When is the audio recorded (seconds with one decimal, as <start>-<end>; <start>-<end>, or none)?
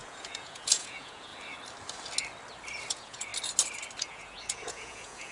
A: 1.3-2.9; 3.3-4.0